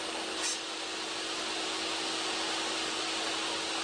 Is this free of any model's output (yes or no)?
yes